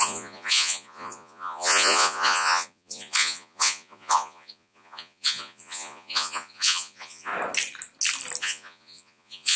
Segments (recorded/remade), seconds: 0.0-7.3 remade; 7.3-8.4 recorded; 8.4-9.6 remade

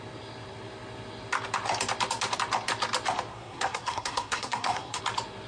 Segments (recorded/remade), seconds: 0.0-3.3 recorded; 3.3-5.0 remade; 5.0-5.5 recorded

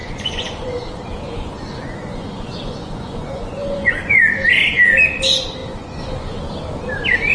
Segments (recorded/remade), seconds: 0.0-4.2 remade; 4.2-5.6 recorded; 5.6-6.4 remade; 6.4-7.3 recorded